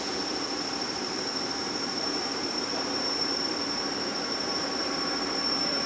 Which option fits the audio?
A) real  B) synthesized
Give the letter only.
B